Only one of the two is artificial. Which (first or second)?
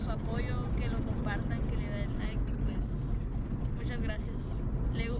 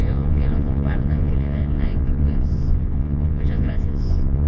second